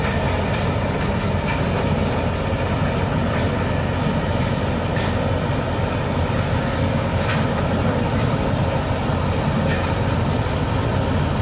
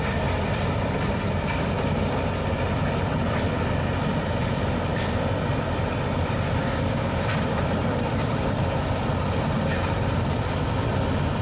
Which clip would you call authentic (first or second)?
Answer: first